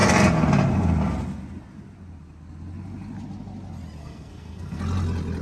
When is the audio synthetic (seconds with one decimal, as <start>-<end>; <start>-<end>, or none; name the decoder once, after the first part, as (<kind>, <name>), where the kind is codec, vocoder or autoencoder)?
4.0-4.8 (codec, SNAC)